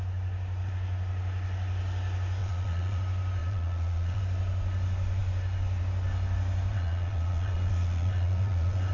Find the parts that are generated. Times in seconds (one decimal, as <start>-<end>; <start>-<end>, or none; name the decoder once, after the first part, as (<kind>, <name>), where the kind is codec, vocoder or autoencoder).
2.4-3.0 (vocoder, Vocos); 3.4-4.2; 6.7-8.9